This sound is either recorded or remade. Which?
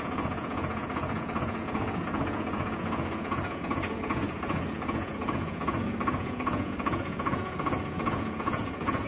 remade